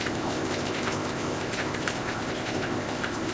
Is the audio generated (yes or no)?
yes